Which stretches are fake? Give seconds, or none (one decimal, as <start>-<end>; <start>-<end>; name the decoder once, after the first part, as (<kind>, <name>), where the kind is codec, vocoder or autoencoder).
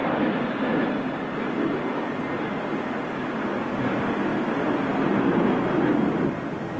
none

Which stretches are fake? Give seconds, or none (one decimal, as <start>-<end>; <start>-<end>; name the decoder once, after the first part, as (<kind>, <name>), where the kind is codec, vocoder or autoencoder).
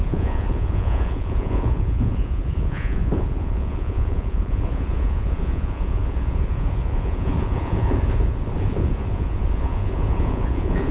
0.0-10.9 (vocoder, Vocos)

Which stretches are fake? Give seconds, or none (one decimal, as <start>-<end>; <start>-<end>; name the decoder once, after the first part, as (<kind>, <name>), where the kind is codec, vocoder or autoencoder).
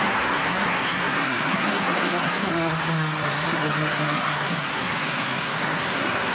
0.0-6.3 (codec, SNAC)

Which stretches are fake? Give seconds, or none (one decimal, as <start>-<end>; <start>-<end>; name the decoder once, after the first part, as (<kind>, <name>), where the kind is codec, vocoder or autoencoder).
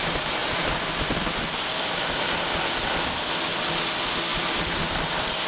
4.3-4.8 (vocoder, BigVGAN v2)